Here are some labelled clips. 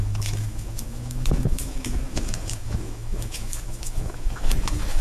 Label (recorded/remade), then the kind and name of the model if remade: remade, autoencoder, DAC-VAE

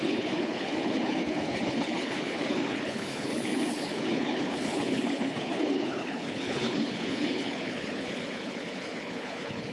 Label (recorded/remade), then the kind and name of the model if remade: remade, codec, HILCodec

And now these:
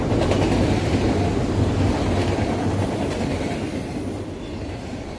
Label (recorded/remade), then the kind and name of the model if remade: recorded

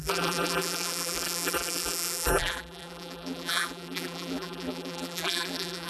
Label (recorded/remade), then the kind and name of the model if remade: remade, vocoder, BigVGAN v2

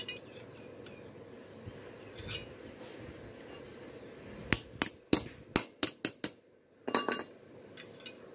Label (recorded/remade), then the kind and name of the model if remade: recorded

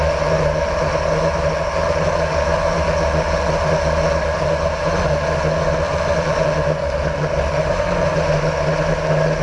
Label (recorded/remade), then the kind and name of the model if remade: recorded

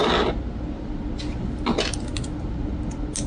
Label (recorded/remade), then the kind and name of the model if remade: recorded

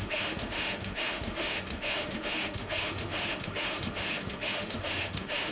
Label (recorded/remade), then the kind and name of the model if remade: remade, autoencoder, DAC-VAE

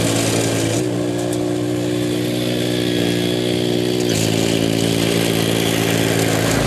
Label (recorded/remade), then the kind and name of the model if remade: recorded